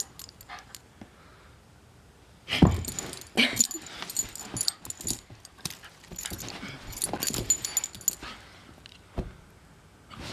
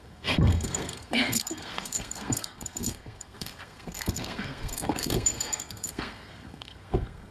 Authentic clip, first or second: first